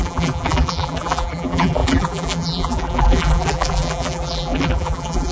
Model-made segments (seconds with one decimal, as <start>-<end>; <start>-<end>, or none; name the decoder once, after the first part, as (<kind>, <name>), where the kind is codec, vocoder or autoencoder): 0.0-5.3 (vocoder, BigVGAN v2)